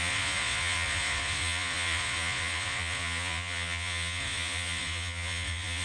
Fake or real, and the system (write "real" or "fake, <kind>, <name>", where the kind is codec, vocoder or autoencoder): fake, vocoder, Vocos